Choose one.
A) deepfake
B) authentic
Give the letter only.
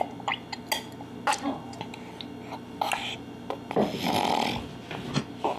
B